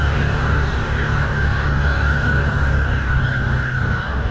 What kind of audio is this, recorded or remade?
remade